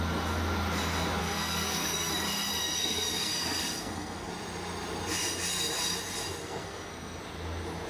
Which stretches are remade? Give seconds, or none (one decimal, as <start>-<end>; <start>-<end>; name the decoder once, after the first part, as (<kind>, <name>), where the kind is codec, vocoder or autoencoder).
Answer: 1.2-2.1 (codec, SNAC); 2.6-4.3; 6.4-7.2